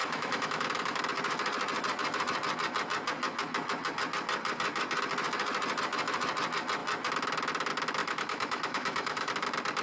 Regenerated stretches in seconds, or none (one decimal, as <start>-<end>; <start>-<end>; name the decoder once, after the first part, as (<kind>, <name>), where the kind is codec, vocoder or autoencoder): 0.0-1.0 (autoencoder, DAC-VAE); 8.0-9.3